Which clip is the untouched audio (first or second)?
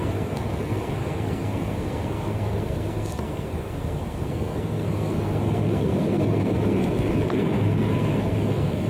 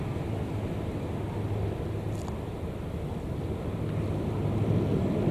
second